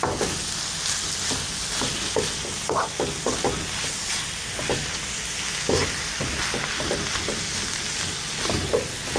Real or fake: real